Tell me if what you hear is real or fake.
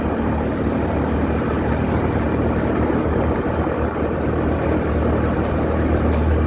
real